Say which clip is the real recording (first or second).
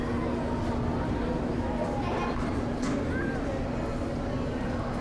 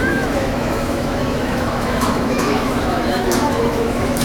first